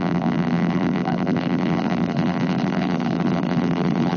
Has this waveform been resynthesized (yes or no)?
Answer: yes